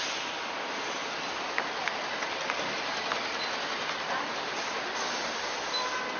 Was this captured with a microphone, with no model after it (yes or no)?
yes